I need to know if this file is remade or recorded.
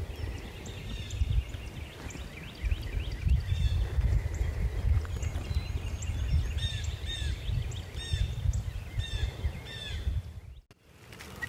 recorded